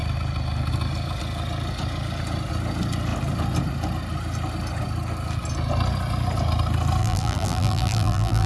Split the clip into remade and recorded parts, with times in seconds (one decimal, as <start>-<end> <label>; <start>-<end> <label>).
0.0-7.0 recorded; 7.0-8.5 remade